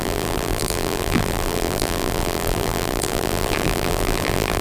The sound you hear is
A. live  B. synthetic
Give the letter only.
B